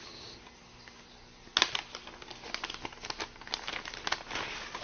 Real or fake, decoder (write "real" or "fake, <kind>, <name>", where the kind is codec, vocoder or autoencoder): real